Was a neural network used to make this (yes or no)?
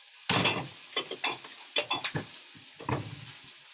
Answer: no